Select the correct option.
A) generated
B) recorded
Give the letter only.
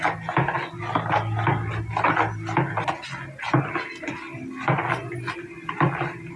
B